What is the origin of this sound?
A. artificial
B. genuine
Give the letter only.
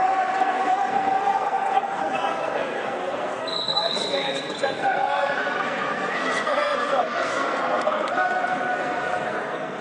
A